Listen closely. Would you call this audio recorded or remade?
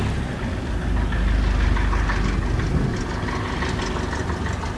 recorded